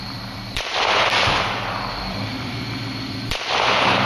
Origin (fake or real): fake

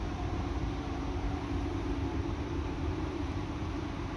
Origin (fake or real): fake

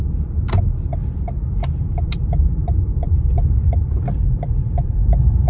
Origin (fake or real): fake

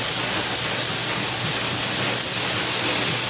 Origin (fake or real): real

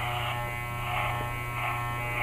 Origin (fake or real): real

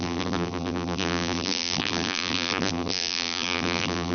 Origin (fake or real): fake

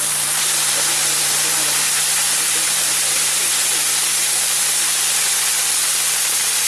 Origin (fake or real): fake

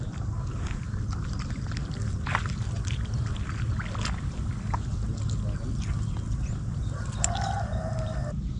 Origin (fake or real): real